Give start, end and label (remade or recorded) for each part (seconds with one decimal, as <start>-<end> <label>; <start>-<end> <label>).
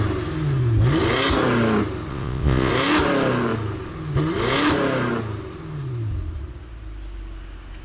0.0-2.1 recorded; 2.1-2.7 remade; 2.7-7.8 recorded